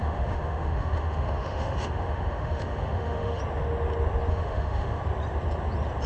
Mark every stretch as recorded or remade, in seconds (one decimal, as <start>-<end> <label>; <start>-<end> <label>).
0.0-3.4 remade; 3.4-4.3 recorded; 4.3-5.0 remade; 5.0-6.1 recorded